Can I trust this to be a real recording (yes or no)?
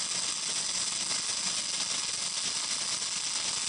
yes